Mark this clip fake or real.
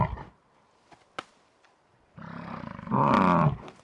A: real